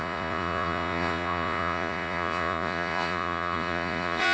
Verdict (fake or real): fake